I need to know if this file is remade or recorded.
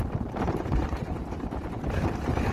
remade